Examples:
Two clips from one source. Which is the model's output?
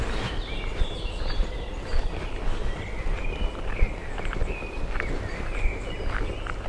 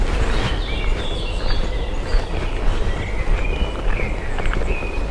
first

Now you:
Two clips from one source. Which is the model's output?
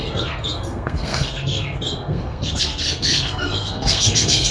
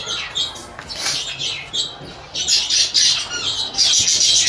first